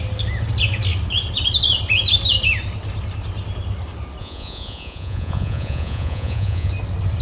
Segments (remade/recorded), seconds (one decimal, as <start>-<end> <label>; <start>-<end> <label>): 0.0-4.2 recorded; 4.2-6.7 remade; 6.7-7.2 recorded